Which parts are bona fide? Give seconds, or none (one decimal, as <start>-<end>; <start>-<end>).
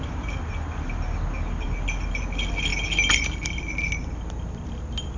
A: 0.0-5.2